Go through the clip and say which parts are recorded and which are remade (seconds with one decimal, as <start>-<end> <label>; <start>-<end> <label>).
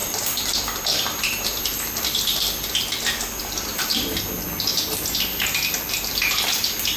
0.0-4.2 remade; 4.2-7.0 recorded